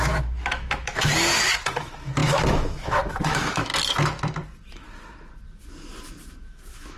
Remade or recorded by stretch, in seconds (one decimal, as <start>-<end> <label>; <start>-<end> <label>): 0.0-1.1 remade; 1.1-1.8 recorded; 1.8-3.7 remade; 3.7-6.4 recorded; 6.4-7.0 remade